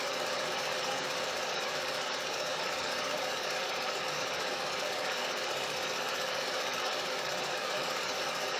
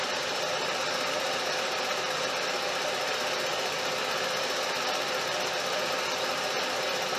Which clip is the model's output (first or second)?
first